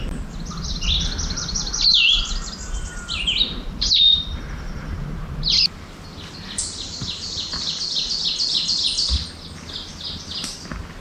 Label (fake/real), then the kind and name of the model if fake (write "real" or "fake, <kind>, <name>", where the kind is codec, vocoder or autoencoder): real